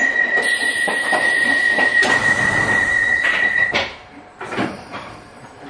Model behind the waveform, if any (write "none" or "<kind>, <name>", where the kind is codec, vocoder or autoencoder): vocoder, BigVGAN v2